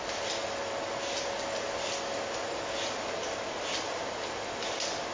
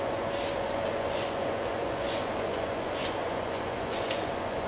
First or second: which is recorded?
first